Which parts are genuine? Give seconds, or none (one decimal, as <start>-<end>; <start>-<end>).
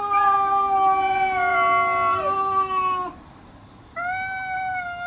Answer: 0.0-5.1